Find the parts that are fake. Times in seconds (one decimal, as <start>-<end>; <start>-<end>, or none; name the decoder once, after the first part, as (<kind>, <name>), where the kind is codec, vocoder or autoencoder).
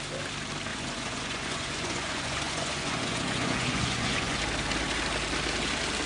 0.7-4.4 (vocoder, Vocos)